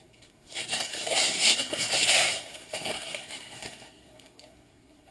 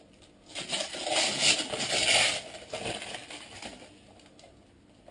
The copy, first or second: first